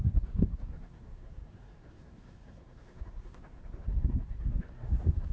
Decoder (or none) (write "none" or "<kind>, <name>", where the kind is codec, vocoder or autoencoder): codec, SNAC